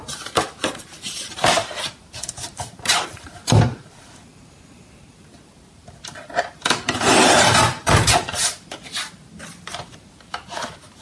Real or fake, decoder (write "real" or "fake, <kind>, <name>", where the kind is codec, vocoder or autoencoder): fake, vocoder, BigVGAN v2